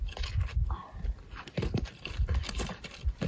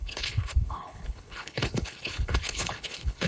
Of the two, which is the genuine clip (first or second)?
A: first